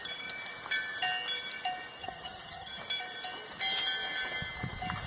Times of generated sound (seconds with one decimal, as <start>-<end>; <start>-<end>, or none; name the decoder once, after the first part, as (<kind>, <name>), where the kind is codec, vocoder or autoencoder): 2.0-2.8 (vocoder, HiFi-GAN)